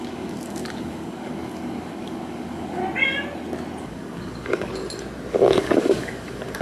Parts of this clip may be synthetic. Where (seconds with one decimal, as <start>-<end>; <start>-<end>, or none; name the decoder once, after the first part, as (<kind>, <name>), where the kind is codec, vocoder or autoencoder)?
0.0-2.8 (codec, DAC); 3.8-4.7; 5.4-6.6